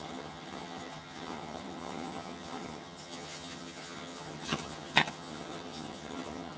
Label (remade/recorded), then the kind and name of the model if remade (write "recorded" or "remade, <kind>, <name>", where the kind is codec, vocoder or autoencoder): remade, vocoder, HiFi-GAN